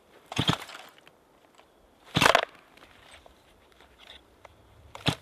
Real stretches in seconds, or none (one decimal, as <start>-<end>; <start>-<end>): 0.7-3.2